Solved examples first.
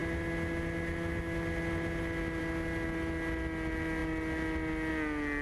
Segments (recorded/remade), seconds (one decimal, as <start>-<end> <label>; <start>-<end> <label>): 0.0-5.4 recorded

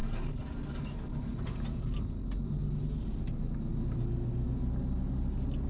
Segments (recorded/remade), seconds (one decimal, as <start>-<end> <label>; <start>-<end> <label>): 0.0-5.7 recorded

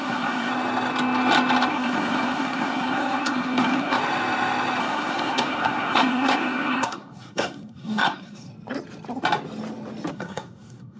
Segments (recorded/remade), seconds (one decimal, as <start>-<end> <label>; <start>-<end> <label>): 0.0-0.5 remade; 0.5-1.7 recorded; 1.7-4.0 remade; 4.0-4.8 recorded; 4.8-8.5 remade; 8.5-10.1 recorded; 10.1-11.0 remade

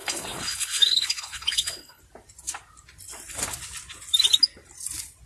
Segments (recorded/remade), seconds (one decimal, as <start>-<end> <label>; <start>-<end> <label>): 0.0-2.0 remade; 2.0-5.3 recorded